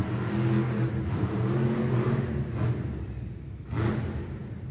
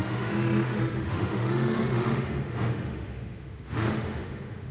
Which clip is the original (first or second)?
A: first